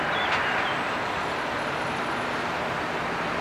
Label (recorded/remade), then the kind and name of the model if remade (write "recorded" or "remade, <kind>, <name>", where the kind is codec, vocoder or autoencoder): recorded